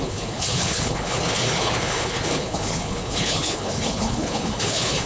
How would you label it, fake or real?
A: fake